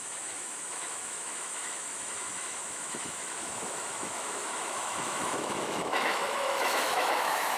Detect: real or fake fake